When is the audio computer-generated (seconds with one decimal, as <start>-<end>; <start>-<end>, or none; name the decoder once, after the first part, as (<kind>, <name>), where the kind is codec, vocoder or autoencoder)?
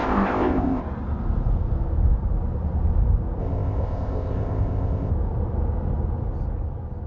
0.0-0.8 (codec, ZipCodec); 3.4-5.1